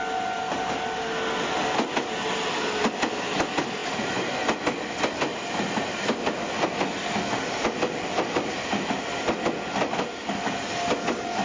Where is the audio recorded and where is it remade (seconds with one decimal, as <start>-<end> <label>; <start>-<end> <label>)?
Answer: 0.0-11.4 recorded